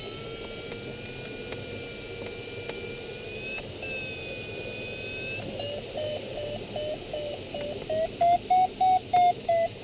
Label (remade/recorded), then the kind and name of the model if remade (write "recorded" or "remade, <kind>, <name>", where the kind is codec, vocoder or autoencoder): recorded